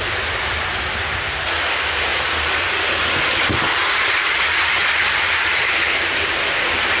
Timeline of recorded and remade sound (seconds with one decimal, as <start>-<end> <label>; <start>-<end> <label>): 0.0-2.1 recorded; 2.1-3.5 remade; 3.5-7.0 recorded